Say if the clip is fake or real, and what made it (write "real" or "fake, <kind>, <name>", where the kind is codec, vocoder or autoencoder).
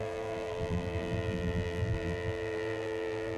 fake, vocoder, BigVGAN v2